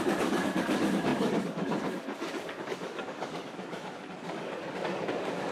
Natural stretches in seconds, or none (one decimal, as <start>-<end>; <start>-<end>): none